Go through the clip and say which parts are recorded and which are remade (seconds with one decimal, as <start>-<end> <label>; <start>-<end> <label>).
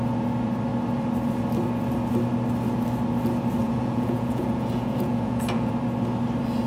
0.0-3.6 recorded; 3.6-5.7 remade; 5.7-6.7 recorded